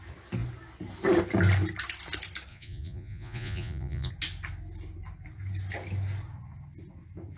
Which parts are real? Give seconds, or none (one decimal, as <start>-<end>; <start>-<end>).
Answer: 0.0-2.5; 4.1-7.4